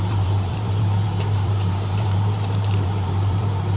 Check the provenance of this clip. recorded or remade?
remade